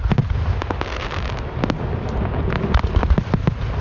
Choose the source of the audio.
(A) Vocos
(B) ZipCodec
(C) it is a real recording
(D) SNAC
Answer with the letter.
C